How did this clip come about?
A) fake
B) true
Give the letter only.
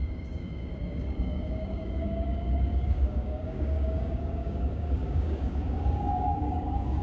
A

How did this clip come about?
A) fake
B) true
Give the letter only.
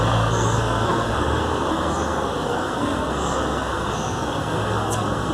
A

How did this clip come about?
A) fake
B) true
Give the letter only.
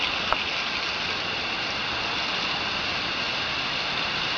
B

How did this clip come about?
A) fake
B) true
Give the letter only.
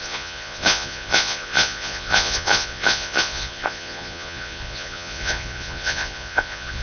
A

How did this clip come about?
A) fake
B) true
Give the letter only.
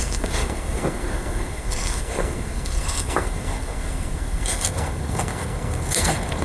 A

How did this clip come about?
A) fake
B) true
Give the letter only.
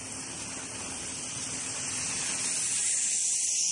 A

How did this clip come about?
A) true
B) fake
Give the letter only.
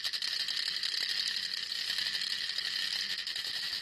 A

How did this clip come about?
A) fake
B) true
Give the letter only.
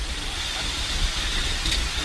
B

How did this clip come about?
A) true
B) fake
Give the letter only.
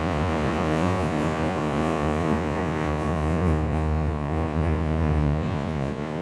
B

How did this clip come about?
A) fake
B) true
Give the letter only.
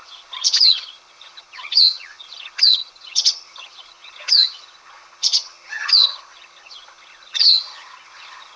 A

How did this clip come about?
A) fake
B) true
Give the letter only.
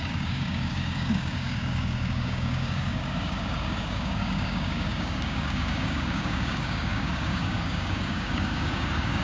A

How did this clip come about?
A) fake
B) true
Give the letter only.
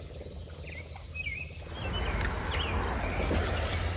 B